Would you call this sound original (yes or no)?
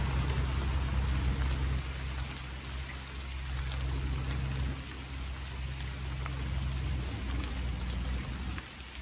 yes